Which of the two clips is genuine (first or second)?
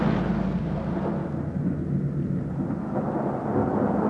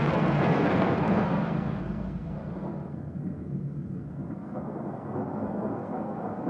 first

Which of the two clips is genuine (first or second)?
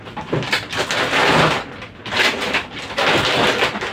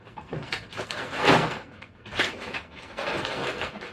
first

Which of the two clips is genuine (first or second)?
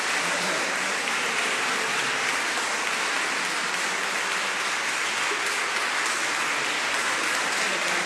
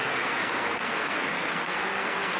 first